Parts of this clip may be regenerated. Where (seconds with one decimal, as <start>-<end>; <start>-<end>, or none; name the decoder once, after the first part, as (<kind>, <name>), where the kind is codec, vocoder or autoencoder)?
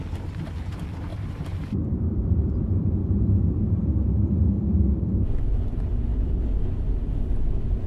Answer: 1.1-2.6 (vocoder, BigVGAN v2)